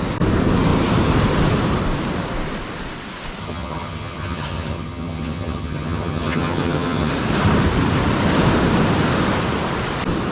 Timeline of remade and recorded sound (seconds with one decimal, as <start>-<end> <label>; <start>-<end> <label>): 0.0-3.4 recorded; 3.4-7.1 remade; 7.1-10.3 recorded